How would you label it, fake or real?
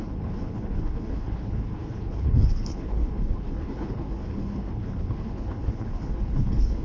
fake